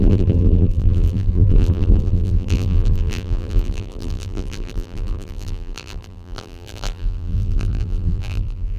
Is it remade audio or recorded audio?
remade